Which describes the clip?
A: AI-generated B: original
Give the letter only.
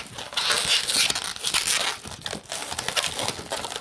B